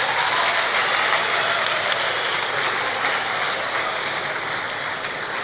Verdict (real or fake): real